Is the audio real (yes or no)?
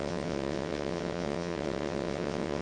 no